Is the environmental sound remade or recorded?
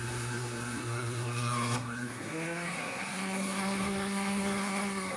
remade